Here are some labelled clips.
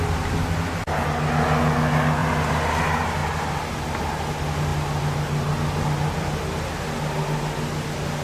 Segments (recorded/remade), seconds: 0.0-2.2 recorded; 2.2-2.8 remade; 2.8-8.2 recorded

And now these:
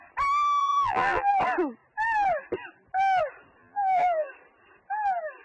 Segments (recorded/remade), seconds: 0.0-0.6 recorded; 0.6-1.3 remade; 1.3-3.6 recorded; 3.6-4.3 remade; 4.3-5.4 recorded

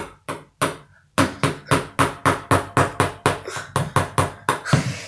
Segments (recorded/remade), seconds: 0.0-5.1 recorded

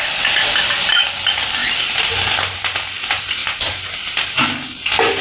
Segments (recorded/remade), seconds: 0.0-5.2 recorded

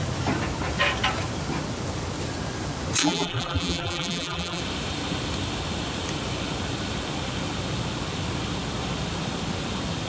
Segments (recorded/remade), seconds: 0.0-3.0 recorded; 3.0-4.6 remade; 4.6-10.1 recorded